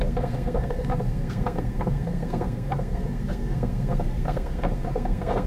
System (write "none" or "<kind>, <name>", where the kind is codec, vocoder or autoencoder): codec, SNAC